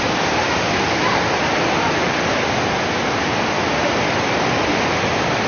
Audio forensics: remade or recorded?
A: recorded